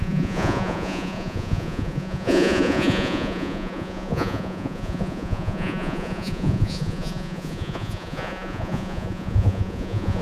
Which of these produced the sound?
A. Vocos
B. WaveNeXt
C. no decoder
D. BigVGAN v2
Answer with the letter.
A